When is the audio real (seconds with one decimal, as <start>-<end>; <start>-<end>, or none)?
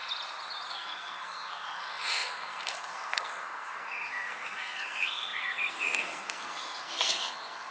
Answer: 0.0-0.7